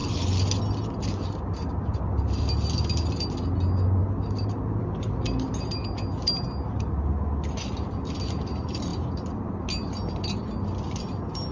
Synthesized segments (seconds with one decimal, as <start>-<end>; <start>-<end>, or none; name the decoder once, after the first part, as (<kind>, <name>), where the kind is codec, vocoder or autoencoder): none